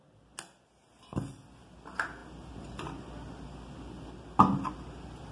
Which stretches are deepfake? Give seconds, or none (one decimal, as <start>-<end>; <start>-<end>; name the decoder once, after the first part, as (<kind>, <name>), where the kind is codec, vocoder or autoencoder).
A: none